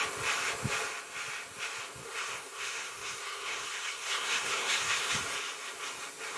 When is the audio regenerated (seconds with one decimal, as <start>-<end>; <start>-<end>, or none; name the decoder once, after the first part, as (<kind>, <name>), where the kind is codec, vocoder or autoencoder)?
2.0-5.1 (codec, SNAC)

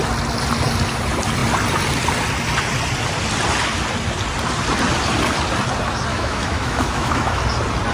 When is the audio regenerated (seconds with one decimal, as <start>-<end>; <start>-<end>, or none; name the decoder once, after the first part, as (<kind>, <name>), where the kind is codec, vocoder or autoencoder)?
6.1-7.4 (autoencoder, DAC-VAE)

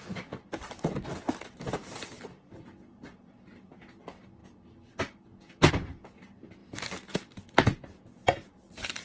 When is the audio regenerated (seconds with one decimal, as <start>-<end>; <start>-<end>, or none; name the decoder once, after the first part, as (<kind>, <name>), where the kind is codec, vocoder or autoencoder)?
none

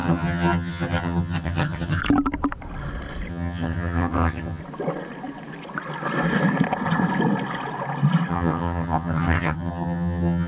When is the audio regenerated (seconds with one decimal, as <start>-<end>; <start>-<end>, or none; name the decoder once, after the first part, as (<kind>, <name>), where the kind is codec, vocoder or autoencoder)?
0.0-2.0 (vocoder, HiFi-GAN); 3.3-4.6; 8.3-10.5

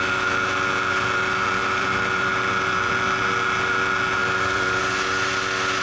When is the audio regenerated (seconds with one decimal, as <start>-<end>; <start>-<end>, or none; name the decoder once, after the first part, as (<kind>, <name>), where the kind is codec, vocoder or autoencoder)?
1.6-2.9 (vocoder, BigVGAN v2); 4.2-4.8

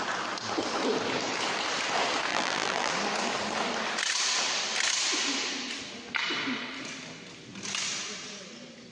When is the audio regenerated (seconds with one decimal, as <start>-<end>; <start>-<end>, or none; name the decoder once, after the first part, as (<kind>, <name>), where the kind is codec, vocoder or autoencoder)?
2.3-2.9 (vocoder, BigVGAN v2)

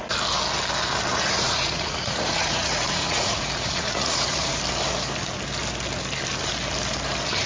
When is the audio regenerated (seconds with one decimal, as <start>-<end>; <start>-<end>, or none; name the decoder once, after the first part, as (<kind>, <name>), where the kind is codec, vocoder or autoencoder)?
1.1-4.6 (vocoder, Vocos)